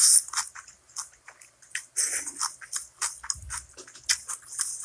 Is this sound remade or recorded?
recorded